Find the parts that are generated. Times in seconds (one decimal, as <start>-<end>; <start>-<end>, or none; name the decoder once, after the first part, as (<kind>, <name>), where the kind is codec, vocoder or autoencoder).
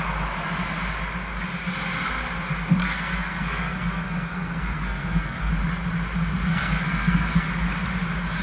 2.8-5.5 (codec, SNAC); 6.5-7.5